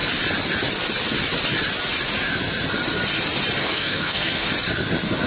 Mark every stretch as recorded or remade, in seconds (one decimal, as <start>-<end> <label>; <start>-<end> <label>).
0.0-3.6 recorded; 3.6-4.5 remade; 4.5-5.3 recorded